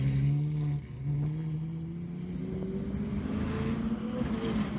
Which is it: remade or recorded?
recorded